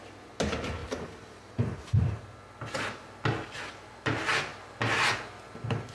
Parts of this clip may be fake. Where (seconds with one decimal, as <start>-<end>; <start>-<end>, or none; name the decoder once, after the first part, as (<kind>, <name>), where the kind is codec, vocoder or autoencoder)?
0.8-2.2 (vocoder, BigVGAN v2)